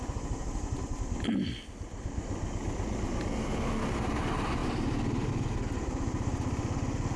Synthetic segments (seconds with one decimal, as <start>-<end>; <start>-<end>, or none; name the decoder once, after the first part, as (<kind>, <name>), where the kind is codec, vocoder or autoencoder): 4.6-5.3 (vocoder, BigVGAN v2)